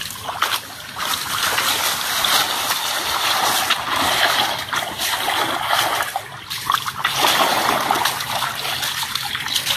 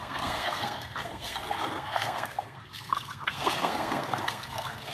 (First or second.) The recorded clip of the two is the first